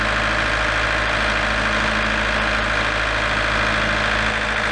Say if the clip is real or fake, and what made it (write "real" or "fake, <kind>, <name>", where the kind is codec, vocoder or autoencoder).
real